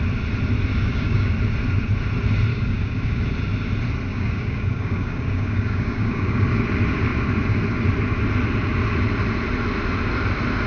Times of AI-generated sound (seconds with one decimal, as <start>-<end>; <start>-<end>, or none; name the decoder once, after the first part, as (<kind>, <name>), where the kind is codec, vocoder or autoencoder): 0.7-1.3 (codec, DAC); 2.5-3.2; 4.1-6.6